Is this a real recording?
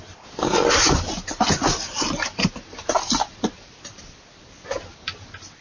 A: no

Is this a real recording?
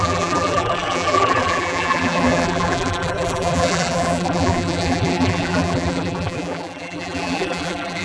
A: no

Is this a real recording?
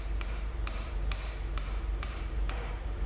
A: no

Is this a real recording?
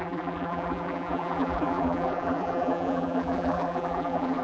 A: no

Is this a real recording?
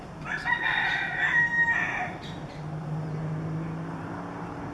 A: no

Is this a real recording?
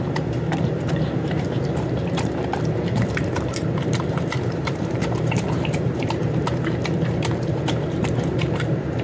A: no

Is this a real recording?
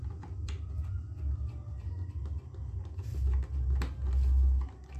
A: yes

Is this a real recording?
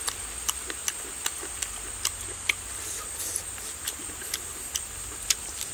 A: yes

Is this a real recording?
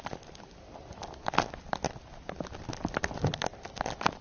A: yes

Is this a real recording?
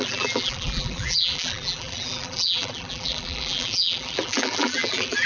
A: no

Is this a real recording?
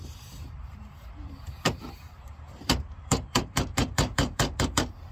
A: no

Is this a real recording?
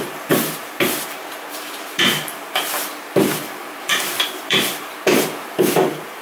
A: no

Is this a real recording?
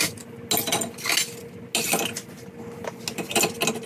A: yes